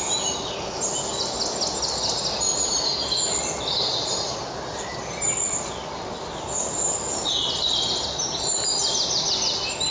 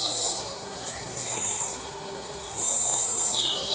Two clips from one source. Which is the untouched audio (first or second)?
first